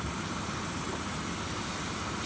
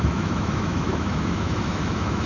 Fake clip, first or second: second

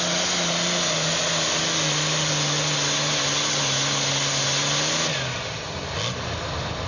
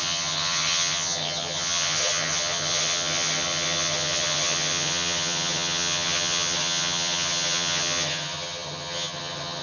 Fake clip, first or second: second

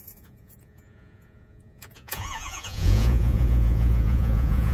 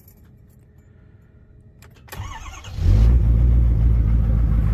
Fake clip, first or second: first